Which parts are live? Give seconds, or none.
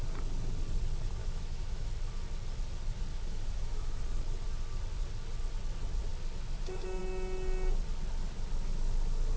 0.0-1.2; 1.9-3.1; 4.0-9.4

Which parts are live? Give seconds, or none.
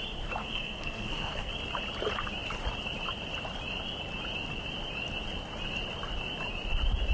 0.0-0.4; 1.5-7.1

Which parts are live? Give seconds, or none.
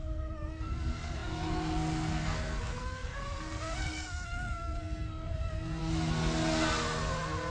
5.8-7.5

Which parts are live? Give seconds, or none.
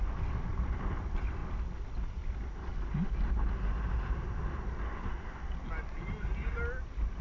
0.0-7.2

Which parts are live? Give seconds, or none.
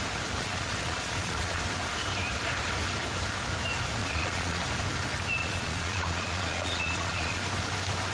0.0-0.4; 1.6-4.0; 4.6-5.4; 7.4-8.1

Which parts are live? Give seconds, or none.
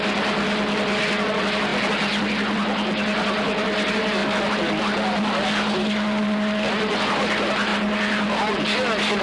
0.0-9.2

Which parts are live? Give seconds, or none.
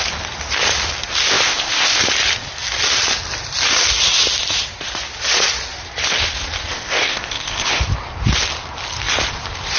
0.0-1.3; 2.0-6.7; 7.8-9.8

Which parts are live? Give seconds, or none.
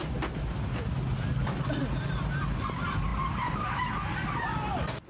0.0-5.1